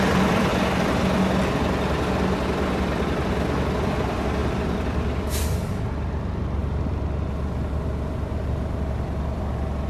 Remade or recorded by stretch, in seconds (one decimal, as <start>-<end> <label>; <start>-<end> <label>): 0.0-0.5 remade; 0.5-3.3 recorded; 3.3-6.6 remade; 6.6-8.1 recorded; 8.1-9.9 remade